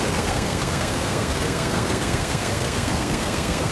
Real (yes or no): no